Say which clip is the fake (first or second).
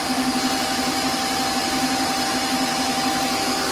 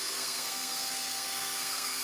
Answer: second